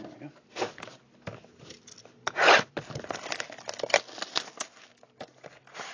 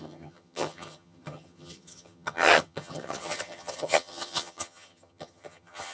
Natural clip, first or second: first